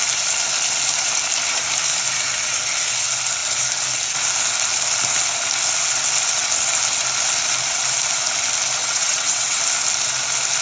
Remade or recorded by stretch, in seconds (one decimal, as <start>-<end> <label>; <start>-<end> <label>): 0.0-8.8 recorded; 8.8-9.6 remade; 9.6-10.6 recorded